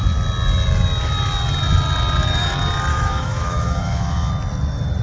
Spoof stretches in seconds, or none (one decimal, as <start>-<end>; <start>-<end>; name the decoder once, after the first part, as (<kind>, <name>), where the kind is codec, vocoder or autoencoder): 2.9-4.3 (autoencoder, DAC-VAE)

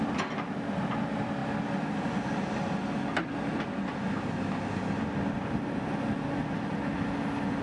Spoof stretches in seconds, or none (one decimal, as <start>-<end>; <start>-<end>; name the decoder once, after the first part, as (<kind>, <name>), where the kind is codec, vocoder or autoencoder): none

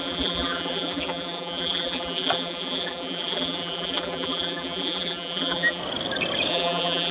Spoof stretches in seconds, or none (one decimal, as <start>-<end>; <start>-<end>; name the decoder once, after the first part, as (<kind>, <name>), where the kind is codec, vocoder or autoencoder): 0.0-5.8 (vocoder, BigVGAN v2); 6.5-7.1